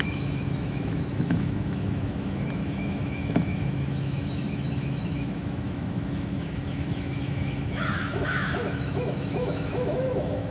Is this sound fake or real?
fake